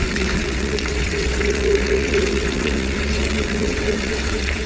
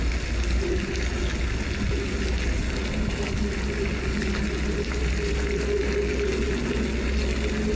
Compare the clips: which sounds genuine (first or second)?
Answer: second